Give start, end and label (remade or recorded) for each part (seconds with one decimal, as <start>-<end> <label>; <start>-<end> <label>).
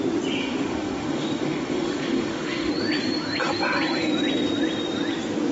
0.0-0.4 recorded; 0.4-2.7 remade; 2.7-5.5 recorded